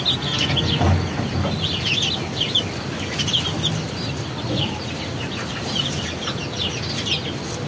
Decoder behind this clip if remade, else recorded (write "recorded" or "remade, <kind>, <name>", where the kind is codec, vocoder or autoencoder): recorded